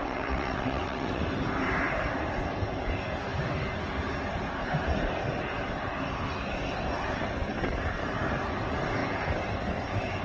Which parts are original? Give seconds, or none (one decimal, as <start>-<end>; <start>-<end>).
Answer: 1.2-10.2